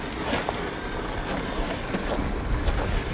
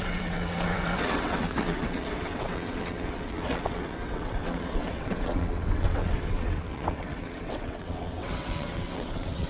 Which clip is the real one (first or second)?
first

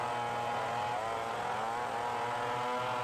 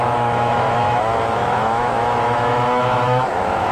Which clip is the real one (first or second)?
first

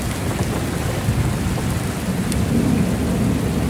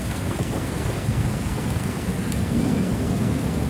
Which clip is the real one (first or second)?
first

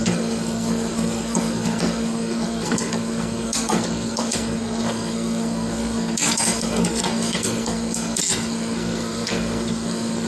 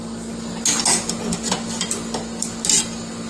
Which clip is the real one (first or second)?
second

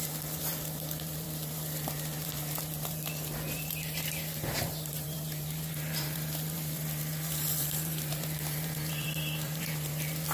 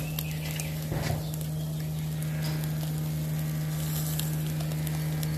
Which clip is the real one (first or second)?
second